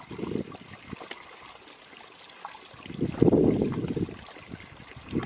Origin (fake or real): real